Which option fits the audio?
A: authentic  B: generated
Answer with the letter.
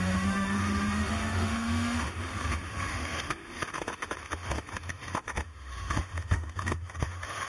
B